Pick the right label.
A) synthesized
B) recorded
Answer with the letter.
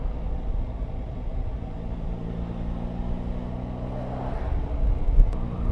B